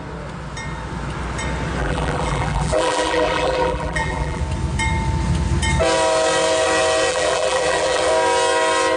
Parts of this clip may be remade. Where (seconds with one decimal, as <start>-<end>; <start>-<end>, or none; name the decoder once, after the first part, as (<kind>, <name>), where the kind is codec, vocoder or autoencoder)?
1.8-4.4 (vocoder, BigVGAN v2); 7.1-8.1